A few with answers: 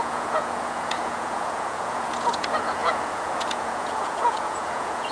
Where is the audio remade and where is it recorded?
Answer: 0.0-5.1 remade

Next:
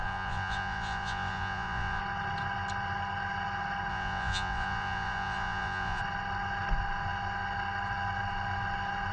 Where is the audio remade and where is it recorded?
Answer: 0.0-2.0 remade; 2.0-3.9 recorded; 3.9-6.0 remade; 6.0-9.1 recorded

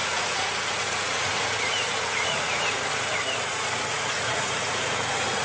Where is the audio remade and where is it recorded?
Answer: 0.0-5.4 remade

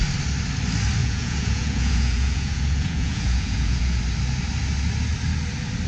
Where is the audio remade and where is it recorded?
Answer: 0.0-1.0 recorded; 1.0-4.0 remade; 4.0-5.9 recorded